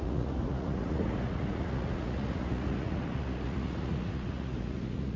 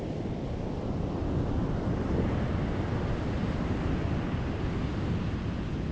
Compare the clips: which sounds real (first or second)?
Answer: second